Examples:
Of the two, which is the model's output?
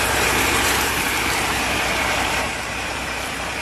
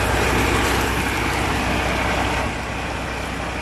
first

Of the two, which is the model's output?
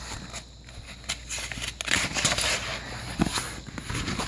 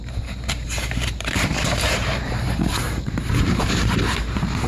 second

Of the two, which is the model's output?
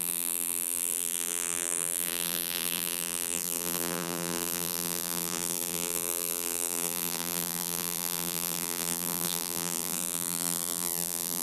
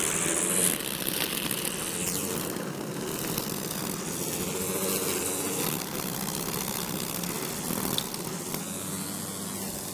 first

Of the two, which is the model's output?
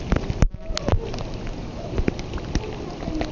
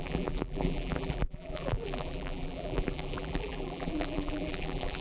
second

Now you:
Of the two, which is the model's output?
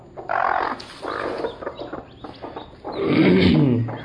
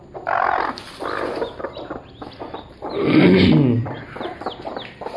second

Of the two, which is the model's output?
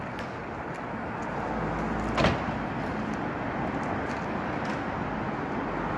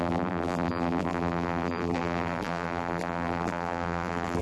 second